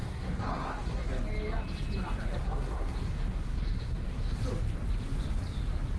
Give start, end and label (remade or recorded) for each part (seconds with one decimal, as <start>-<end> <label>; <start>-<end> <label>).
0.0-1.1 remade; 1.1-2.4 recorded; 2.4-4.4 remade; 4.4-6.0 recorded